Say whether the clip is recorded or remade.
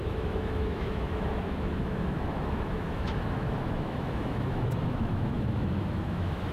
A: remade